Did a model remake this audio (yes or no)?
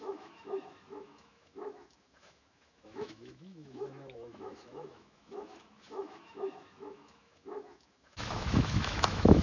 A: yes